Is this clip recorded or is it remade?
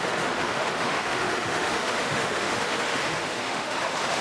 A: remade